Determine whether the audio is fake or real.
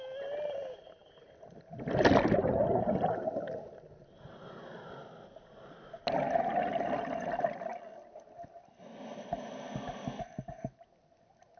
real